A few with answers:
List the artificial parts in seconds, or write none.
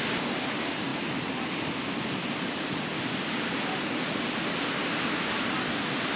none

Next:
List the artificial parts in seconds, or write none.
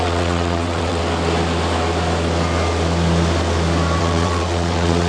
0.0-1.0 (vocoder, WaveNeXt); 4.0-5.1